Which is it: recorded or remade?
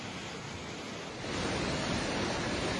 recorded